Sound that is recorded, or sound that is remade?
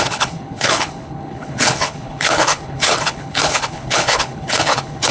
remade